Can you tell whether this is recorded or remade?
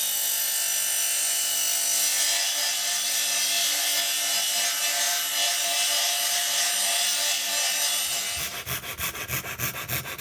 recorded